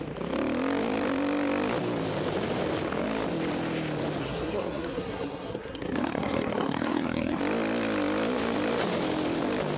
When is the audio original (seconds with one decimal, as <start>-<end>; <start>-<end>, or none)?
0.0-4.2; 7.4-9.8